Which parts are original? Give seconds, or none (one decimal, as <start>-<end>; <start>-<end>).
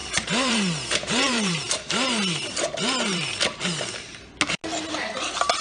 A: 3.4-5.6